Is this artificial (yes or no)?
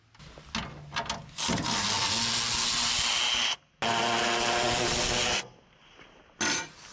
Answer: no